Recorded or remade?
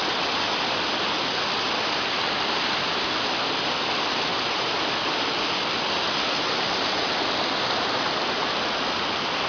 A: recorded